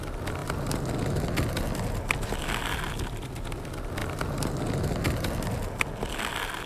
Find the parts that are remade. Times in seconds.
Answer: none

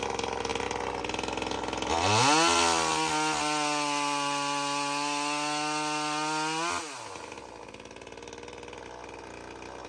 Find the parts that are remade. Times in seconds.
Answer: none

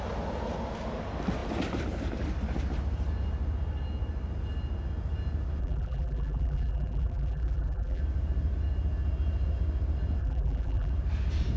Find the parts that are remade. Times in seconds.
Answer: 5.6-8.0 (vocoder, BigVGAN v2); 10.2-10.9

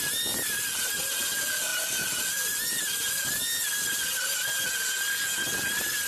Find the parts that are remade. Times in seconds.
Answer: none

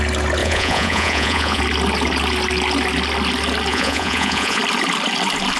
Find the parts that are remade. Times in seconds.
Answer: 0.4-1.6 (vocoder, Vocos); 3.7-4.6